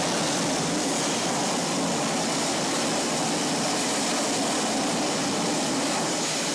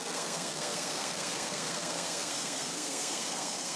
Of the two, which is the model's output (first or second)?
second